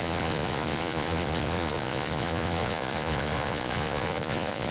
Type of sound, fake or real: fake